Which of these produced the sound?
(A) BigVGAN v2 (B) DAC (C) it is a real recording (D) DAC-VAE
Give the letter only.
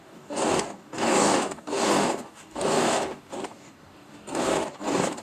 B